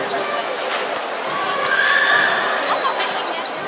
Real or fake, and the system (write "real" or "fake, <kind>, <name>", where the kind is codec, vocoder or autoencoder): real